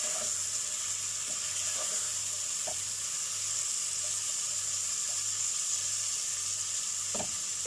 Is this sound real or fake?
real